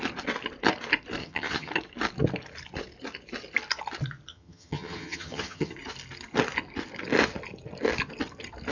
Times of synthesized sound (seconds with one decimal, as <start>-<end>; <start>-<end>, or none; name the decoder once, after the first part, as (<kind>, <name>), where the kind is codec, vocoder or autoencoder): 1.2-1.7 (vocoder, HiFi-GAN); 4.3-5.7